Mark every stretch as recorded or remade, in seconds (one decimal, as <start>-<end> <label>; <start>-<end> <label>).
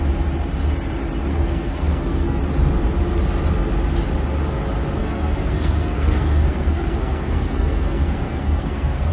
0.0-1.3 recorded; 1.3-2.4 remade; 2.4-5.0 recorded; 5.0-9.1 remade